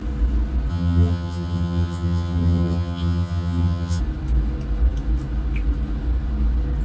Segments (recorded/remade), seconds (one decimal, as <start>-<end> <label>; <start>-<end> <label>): 0.0-0.7 recorded; 0.7-4.0 remade; 4.0-6.8 recorded